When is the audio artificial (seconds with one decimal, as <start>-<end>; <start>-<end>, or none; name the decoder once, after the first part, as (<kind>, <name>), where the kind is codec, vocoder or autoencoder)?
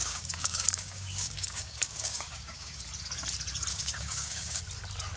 0.0-2.8 (codec, DAC); 3.7-4.6